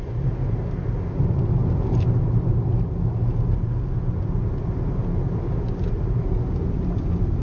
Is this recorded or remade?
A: recorded